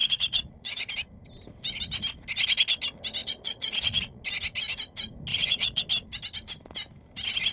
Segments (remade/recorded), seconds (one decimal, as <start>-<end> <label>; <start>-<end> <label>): 0.0-0.9 remade; 0.9-3.2 recorded; 3.2-4.2 remade; 4.2-5.3 recorded; 5.3-5.8 remade; 5.8-7.5 recorded